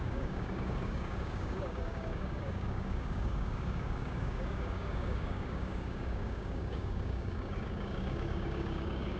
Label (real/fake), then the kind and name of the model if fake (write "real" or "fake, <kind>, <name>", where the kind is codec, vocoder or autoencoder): fake, codec, DAC